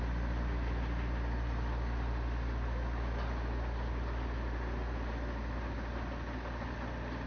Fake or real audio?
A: real